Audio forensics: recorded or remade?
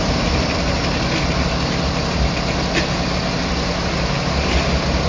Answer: recorded